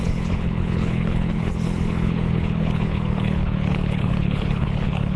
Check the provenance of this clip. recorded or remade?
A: remade